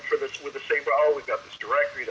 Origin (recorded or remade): recorded